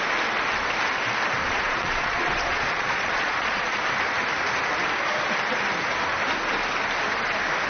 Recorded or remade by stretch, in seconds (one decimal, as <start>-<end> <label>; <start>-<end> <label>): 0.0-1.4 recorded; 1.4-3.8 remade; 3.8-7.7 recorded